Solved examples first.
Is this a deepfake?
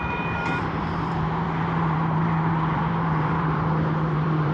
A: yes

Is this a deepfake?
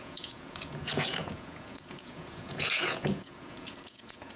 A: yes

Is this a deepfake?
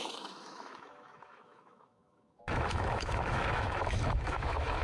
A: yes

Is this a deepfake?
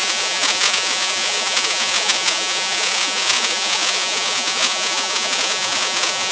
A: yes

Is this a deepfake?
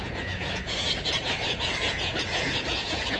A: yes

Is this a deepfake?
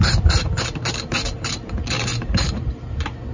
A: yes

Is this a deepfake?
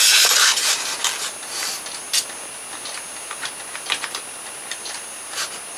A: no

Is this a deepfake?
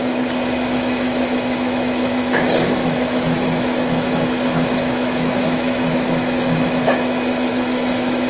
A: yes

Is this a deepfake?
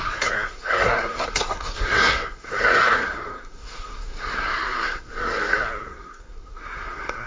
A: yes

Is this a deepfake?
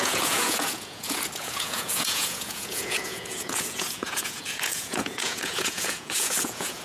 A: yes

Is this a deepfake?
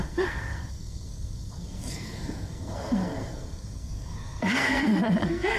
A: yes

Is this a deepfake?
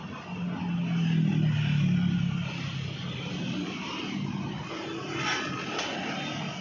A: no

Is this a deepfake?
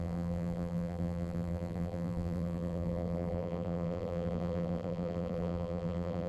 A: yes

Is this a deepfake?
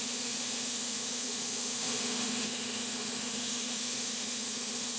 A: yes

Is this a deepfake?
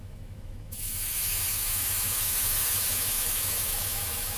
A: yes